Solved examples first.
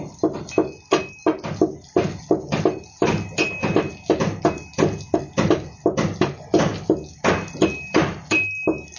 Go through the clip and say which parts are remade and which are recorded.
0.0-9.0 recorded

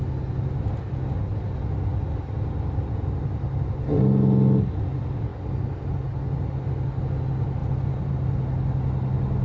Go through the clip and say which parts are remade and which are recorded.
0.0-7.6 recorded; 7.6-8.1 remade; 8.1-9.4 recorded